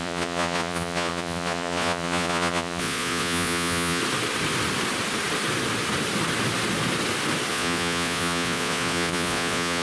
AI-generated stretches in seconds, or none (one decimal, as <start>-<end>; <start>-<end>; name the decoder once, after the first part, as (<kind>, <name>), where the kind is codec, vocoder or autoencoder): 0.0-4.0 (vocoder, Vocos); 7.5-9.8